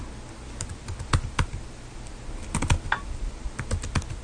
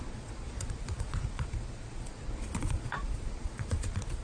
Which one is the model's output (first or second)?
second